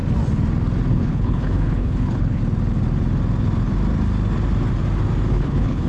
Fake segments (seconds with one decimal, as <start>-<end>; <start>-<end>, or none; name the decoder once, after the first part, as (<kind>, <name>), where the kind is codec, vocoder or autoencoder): 0.9-2.4 (codec, HILCodec); 5.3-5.9